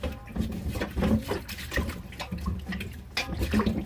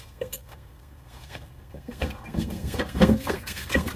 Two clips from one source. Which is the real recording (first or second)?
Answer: first